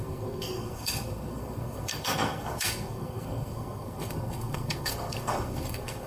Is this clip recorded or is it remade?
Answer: remade